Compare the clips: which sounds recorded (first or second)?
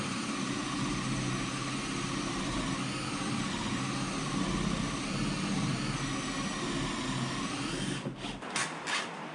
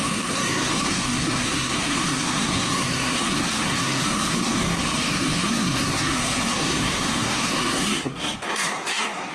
first